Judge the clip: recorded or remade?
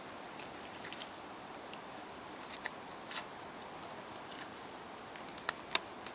recorded